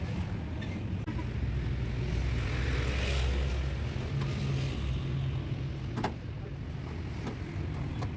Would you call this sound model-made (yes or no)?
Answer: no